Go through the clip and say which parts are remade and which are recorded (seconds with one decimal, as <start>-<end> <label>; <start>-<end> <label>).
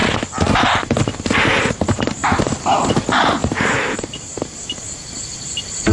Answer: 0.0-1.7 recorded; 1.7-2.2 remade; 2.2-2.9 recorded; 2.9-5.9 remade